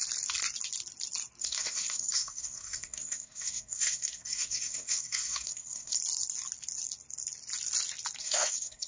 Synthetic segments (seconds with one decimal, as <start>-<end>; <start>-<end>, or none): 1.4-6.0; 8.2-8.9